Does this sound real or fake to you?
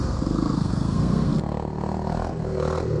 fake